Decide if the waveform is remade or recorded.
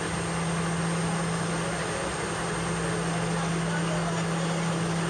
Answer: recorded